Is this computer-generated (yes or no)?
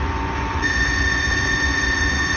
yes